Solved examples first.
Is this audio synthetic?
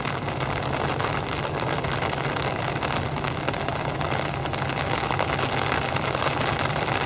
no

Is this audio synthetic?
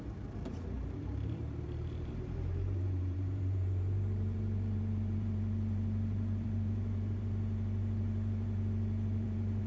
yes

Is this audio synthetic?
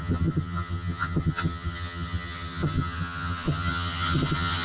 yes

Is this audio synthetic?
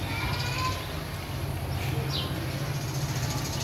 no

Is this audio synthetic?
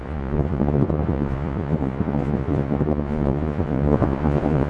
yes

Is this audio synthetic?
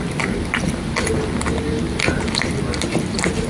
no